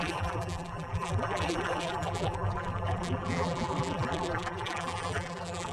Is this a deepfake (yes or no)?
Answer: yes